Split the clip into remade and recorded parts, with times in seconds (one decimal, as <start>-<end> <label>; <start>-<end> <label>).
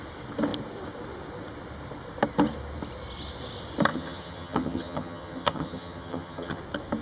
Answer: 0.0-3.9 recorded; 3.9-6.6 remade; 6.6-7.0 recorded